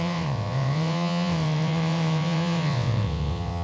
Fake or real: fake